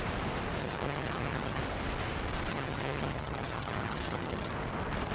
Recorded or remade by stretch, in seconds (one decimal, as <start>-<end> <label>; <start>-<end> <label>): 0.0-0.6 recorded; 0.6-1.6 remade; 1.6-2.5 recorded; 2.5-4.5 remade; 4.5-5.1 recorded